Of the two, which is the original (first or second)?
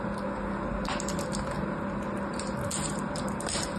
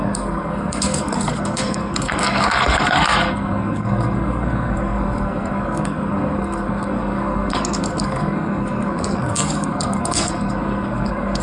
first